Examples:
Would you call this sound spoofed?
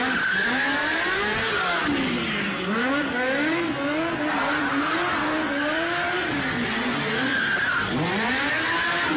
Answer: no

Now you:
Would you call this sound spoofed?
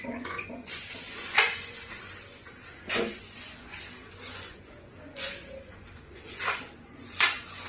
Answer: yes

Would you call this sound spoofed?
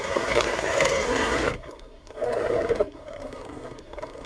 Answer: yes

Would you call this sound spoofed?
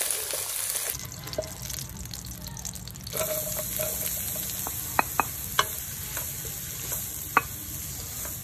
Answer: no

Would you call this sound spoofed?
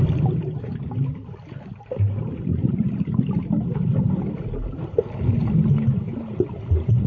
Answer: no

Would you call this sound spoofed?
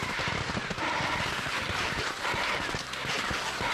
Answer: no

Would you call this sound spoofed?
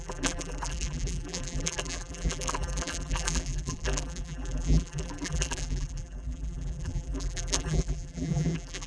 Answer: yes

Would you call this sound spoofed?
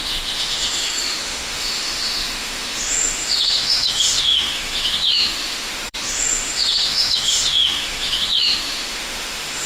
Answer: yes